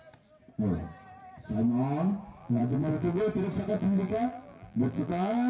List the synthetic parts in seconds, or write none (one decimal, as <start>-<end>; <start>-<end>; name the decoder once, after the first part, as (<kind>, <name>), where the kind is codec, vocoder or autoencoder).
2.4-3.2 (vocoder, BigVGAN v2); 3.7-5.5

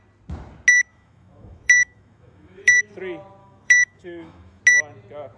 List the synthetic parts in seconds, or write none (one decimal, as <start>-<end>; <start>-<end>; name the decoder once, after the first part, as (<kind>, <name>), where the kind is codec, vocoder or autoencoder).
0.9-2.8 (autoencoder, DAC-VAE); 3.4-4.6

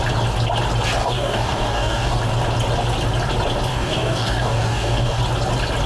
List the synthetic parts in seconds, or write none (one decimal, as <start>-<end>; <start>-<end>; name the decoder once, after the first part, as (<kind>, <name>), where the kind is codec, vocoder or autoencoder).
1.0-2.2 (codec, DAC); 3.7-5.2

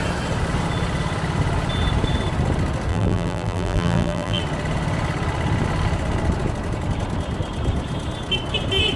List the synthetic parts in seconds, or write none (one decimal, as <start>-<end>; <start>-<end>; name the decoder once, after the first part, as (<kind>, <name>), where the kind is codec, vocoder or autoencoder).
2.9-4.4 (vocoder, BigVGAN v2)

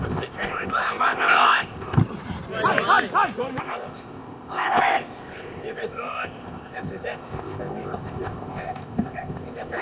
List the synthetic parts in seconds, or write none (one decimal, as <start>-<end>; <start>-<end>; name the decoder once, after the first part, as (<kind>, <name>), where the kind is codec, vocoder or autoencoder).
0.0-2.0 (codec, ZipCodec); 3.6-9.8